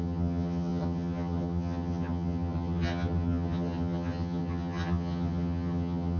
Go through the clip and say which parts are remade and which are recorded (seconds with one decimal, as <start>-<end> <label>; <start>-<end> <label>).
0.0-6.2 remade